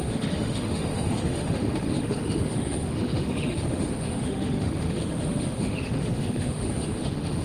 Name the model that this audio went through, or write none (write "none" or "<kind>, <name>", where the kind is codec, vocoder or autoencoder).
autoencoder, DAC-VAE